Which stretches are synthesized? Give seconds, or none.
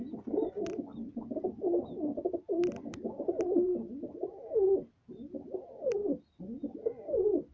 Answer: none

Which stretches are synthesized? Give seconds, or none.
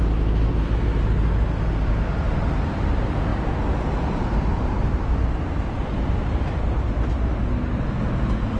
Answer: none